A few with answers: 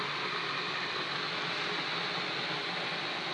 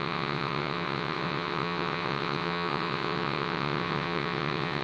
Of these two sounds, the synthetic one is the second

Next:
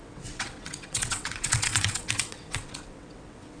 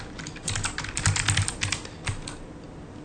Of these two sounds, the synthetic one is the first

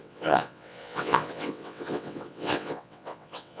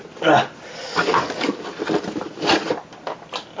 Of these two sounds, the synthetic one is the first